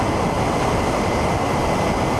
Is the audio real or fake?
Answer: real